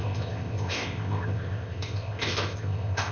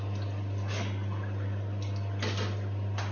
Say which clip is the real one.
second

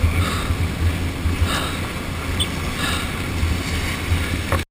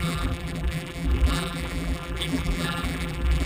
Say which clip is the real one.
first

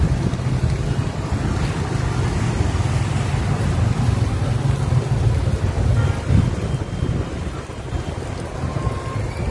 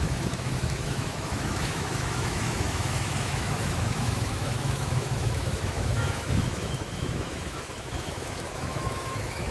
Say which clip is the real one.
first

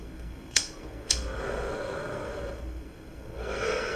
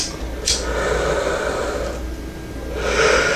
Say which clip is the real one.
second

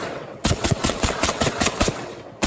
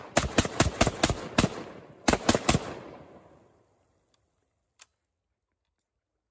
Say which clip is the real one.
second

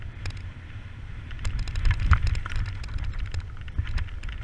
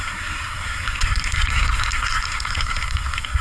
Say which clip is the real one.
first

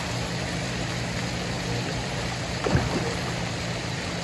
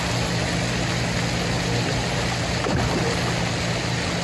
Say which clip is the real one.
second